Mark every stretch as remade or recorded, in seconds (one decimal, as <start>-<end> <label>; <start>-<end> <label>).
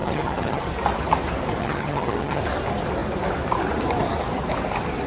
0.0-0.7 remade; 0.7-1.6 recorded; 1.6-2.4 remade; 2.4-5.1 recorded